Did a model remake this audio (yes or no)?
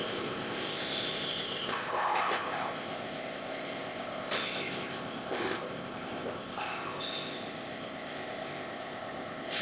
yes